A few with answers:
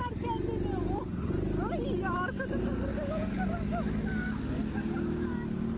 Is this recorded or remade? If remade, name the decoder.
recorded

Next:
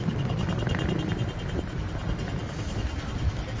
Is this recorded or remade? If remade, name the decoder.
recorded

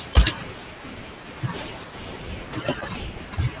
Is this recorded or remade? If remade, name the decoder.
remade, vocoder, BigVGAN v2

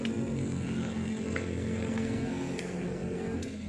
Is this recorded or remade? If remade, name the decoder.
remade, codec, SNAC